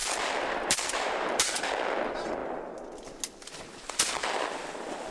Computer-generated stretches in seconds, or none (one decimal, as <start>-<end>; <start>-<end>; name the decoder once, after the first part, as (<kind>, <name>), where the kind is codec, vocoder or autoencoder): 0.0-1.7 (vocoder, BigVGAN v2)